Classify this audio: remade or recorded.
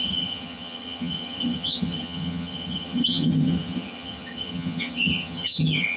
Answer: remade